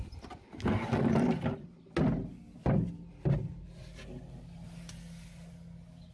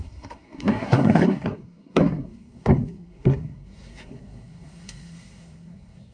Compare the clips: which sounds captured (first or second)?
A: first